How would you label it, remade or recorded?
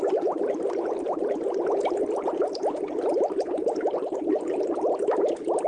recorded